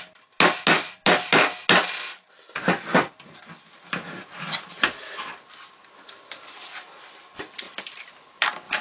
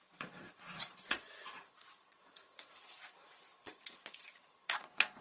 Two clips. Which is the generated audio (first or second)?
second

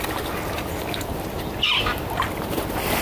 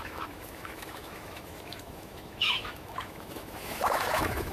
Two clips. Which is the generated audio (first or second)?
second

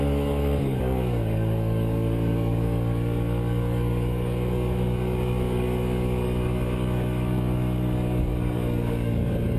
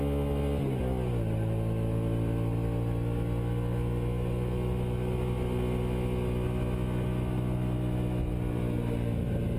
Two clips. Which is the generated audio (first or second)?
first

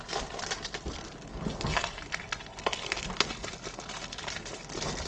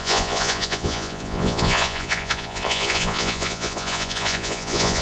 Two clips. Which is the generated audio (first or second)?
second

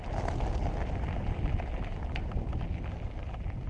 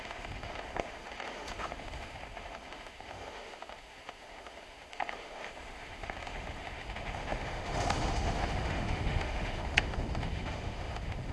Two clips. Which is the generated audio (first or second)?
second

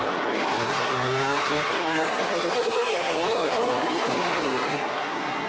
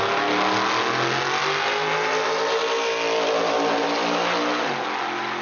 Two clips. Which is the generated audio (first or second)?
first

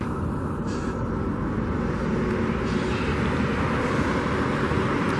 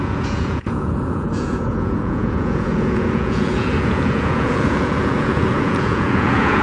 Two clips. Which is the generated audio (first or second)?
second